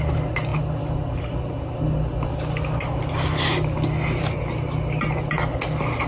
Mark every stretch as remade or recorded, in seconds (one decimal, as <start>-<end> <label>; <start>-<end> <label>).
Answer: 0.0-6.1 recorded

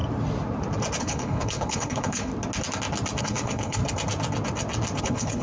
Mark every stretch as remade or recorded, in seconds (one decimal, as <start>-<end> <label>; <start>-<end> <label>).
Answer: 0.0-1.0 recorded; 1.0-2.3 remade; 2.3-3.2 recorded; 3.2-3.8 remade; 3.8-5.0 recorded; 5.0-5.4 remade

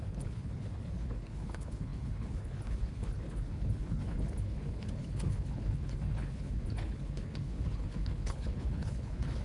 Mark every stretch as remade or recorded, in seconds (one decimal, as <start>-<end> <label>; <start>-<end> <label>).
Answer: 0.0-9.4 remade

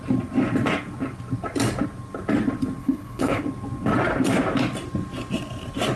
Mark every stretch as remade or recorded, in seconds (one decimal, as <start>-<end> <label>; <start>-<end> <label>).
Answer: 0.0-2.8 recorded; 2.8-3.4 remade; 3.4-6.0 recorded